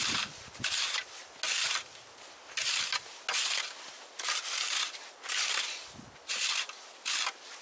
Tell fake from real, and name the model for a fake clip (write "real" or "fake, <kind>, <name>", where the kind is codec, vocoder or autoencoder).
real